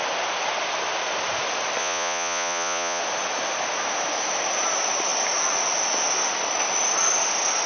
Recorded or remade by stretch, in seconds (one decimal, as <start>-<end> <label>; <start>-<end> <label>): 0.0-1.8 recorded; 1.8-3.0 remade; 3.0-7.7 recorded